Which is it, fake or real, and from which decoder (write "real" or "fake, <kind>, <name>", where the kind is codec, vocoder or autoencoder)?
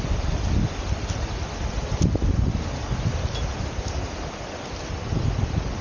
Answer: real